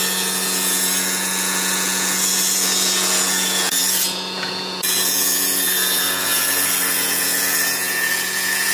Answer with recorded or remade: remade